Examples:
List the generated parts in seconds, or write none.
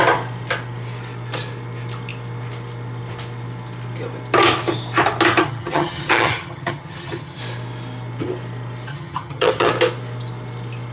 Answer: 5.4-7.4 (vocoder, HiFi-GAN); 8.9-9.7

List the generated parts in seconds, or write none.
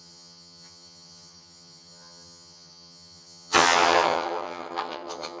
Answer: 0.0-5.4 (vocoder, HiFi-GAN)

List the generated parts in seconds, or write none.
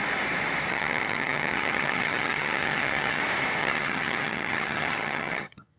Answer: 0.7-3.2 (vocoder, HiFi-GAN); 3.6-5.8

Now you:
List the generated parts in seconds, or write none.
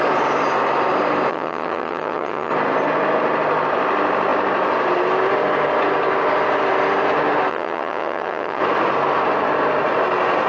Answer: 1.3-2.5 (vocoder, HiFi-GAN); 7.5-8.6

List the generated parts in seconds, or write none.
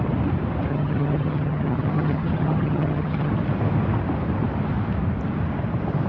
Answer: 0.7-3.3 (vocoder, HiFi-GAN)